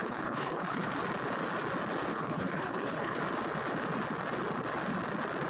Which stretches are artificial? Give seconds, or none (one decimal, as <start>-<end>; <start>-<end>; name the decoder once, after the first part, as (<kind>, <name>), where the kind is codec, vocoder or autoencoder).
0.0-0.9 (codec, HILCodec); 2.1-3.2